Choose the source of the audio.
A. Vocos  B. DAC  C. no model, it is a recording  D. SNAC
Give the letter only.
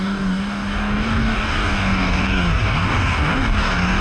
B